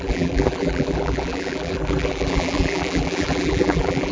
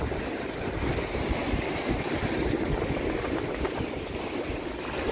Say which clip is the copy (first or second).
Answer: first